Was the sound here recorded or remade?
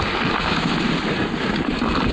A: recorded